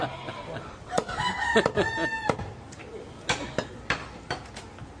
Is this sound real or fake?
real